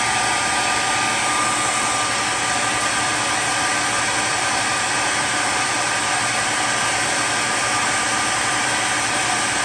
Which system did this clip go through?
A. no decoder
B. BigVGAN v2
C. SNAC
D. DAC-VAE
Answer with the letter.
A